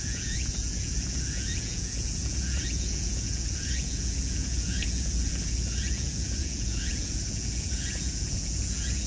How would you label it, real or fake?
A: fake